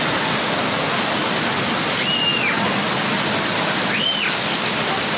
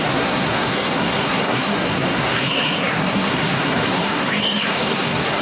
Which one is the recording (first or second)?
first